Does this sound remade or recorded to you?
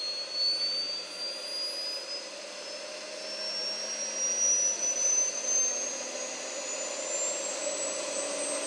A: recorded